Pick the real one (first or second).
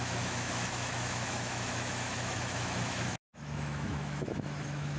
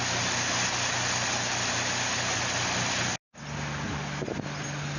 second